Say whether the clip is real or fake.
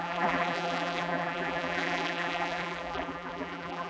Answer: fake